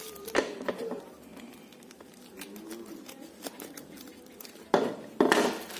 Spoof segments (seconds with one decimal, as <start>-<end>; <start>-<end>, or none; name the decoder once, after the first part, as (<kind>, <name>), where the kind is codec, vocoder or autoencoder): none